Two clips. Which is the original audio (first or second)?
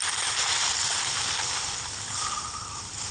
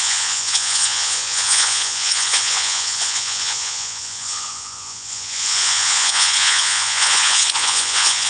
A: first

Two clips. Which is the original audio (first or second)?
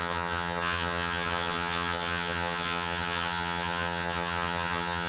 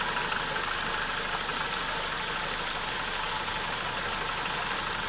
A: second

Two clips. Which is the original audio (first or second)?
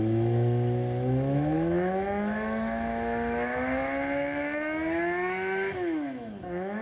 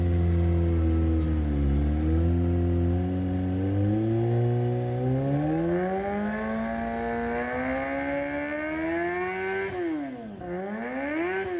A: second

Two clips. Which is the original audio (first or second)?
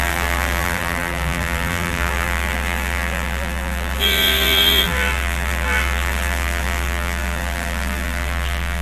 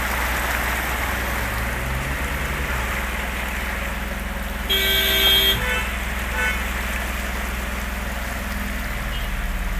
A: second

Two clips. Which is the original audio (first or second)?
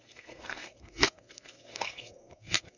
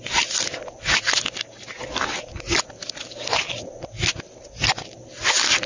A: second